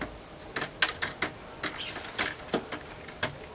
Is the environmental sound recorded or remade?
recorded